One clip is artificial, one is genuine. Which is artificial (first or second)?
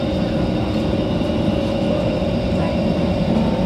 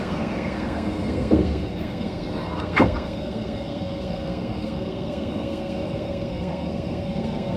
second